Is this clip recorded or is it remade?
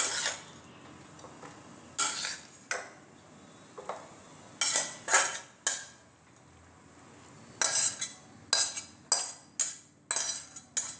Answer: recorded